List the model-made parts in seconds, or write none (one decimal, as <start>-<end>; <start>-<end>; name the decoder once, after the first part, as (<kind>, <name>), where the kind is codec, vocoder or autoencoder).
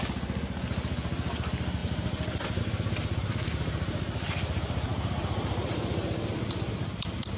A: 1.8-2.6 (vocoder, BigVGAN v2); 4.9-6.3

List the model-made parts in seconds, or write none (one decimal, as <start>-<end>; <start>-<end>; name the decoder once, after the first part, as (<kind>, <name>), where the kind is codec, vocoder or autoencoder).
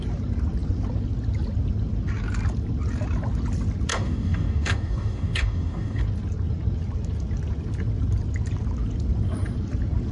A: 3.9-6.0 (codec, DAC)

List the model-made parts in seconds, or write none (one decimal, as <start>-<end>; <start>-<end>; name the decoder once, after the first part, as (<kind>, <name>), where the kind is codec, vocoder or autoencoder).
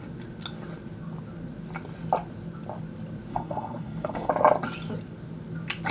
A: 3.3-4.3 (codec, SNAC)